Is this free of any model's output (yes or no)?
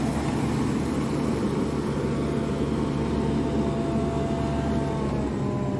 yes